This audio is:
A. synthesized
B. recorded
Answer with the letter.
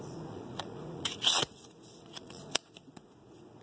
A